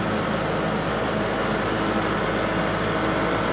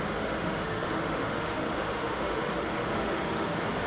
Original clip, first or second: first